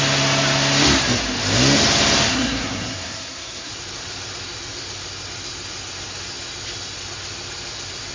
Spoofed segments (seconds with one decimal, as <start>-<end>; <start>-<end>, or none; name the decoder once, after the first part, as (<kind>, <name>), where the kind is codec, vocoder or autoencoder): 2.3-3.7 (codec, SNAC)